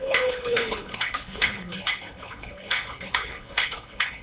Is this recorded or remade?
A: remade